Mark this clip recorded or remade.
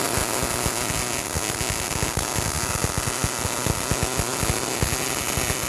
recorded